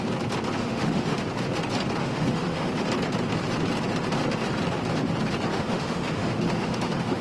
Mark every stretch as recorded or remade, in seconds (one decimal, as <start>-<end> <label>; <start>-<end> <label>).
0.0-0.6 recorded; 0.6-1.2 remade; 1.2-2.0 recorded; 2.0-2.7 remade; 2.7-5.5 recorded; 5.5-7.2 remade